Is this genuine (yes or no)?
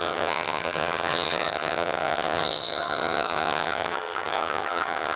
no